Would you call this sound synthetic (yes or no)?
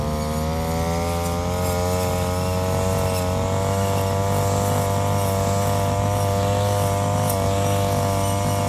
no